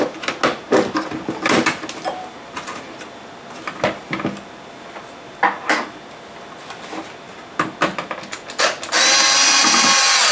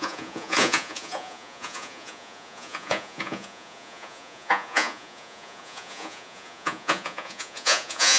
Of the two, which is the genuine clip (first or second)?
first